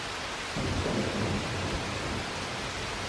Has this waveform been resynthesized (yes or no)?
no